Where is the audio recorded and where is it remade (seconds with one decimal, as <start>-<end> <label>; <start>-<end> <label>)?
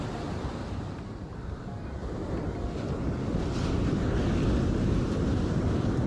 0.0-6.1 recorded